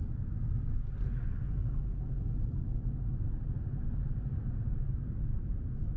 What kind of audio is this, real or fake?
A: real